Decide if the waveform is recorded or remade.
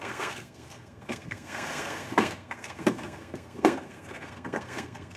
remade